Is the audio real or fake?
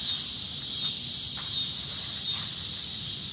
real